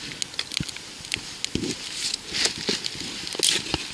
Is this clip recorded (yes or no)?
yes